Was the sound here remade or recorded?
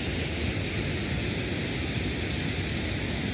recorded